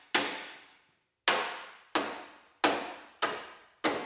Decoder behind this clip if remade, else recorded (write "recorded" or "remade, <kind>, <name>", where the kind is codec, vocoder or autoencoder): recorded